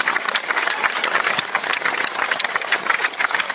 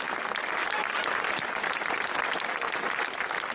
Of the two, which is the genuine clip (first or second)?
second